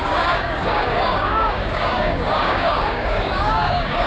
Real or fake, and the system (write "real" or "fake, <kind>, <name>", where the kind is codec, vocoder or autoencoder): fake, codec, DAC